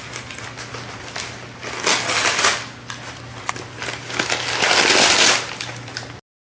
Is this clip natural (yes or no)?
yes